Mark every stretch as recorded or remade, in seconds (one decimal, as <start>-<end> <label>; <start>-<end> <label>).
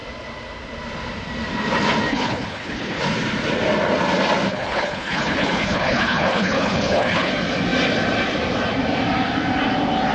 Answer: 0.0-2.1 recorded; 2.1-3.0 remade; 3.0-4.5 recorded; 4.5-7.3 remade; 7.3-10.1 recorded